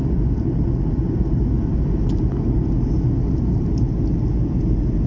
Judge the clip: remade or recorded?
recorded